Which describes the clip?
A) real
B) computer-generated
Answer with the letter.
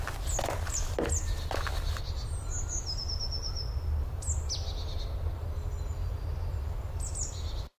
A